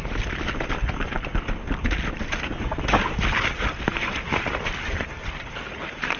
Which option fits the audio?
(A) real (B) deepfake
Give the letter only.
A